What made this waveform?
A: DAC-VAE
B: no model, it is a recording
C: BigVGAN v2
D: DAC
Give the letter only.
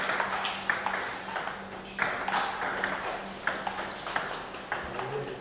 B